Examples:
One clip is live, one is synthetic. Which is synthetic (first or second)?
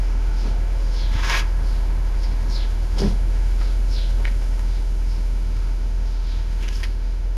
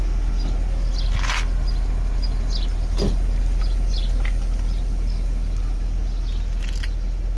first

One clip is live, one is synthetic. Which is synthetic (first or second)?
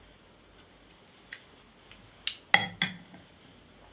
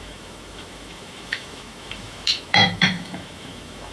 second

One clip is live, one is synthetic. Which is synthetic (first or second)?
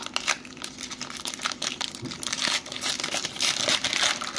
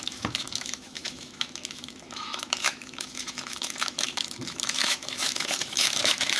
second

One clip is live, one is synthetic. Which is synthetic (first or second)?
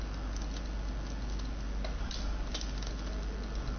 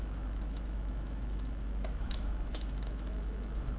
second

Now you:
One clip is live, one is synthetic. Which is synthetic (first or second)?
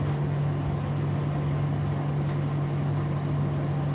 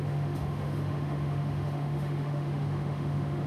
second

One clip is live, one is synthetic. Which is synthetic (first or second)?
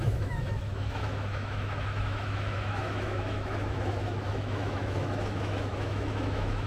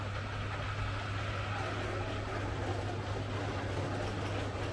first